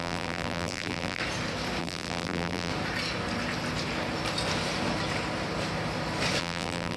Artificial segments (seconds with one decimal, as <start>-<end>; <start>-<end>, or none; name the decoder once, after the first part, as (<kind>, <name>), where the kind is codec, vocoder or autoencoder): 0.0-1.2 (vocoder, BigVGAN v2); 1.8-2.7; 6.4-7.0